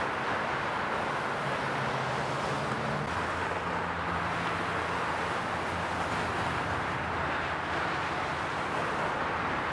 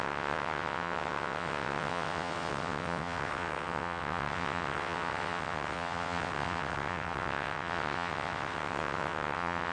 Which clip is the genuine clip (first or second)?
first